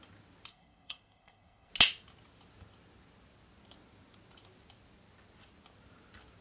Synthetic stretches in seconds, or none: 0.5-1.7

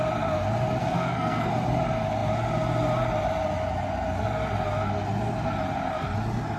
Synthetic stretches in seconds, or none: 0.8-1.5

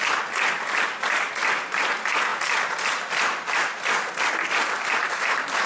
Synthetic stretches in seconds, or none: none

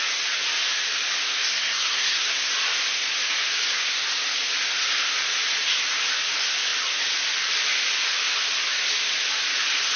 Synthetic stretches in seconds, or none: 1.5-2.5

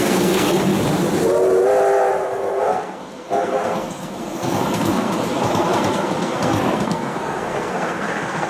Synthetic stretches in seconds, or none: 0.0-0.7; 2.3-8.5

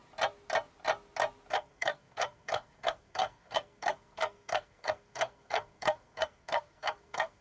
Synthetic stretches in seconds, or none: 1.5-7.4